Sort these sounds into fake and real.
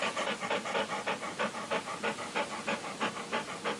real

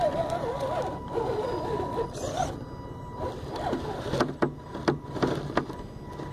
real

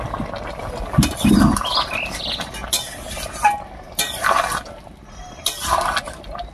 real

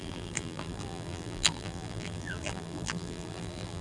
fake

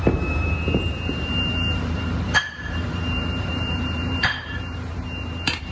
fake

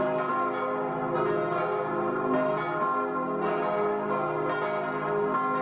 real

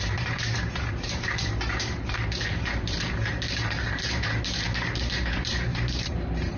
fake